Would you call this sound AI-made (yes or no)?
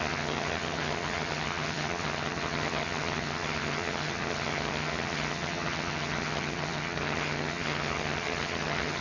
yes